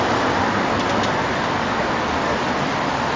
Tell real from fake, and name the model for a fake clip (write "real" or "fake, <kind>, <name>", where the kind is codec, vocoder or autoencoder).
real